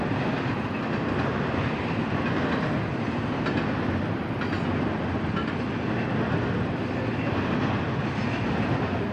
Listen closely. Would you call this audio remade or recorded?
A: recorded